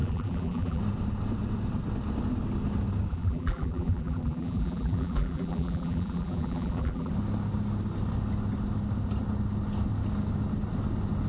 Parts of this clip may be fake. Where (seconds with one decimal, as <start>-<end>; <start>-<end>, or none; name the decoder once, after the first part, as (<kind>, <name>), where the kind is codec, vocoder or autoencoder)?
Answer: 0.0-0.8 (vocoder, BigVGAN v2); 3.1-7.1